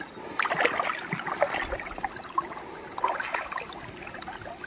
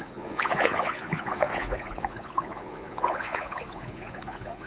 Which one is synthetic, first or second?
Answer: second